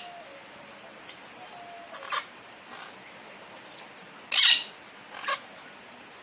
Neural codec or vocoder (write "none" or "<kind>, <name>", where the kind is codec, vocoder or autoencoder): none